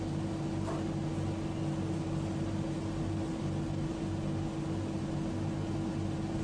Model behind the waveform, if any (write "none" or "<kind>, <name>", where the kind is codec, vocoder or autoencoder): none